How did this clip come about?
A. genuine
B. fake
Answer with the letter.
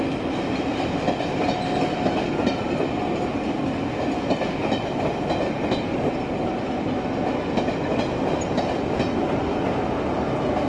A